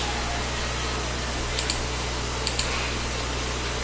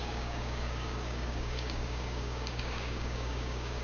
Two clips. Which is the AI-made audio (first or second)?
second